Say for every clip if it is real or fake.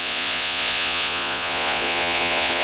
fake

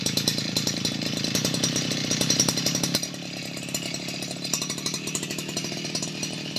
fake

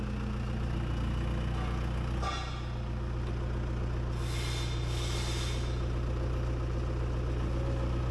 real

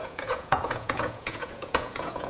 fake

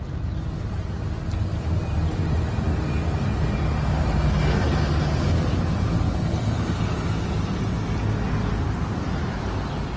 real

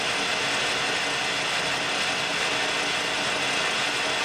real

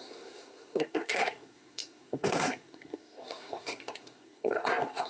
fake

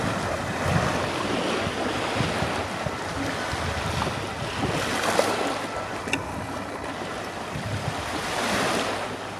real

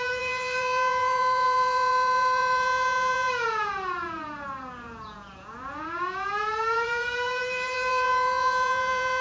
fake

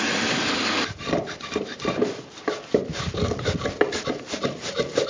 fake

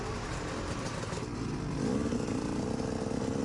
real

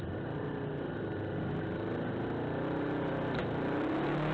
real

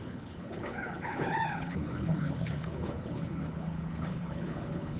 fake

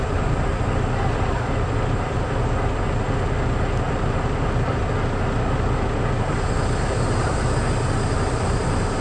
real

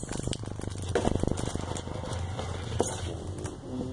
real